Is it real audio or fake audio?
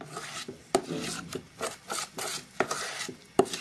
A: real